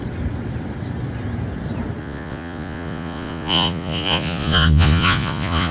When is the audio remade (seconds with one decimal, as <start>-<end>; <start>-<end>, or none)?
2.0-5.7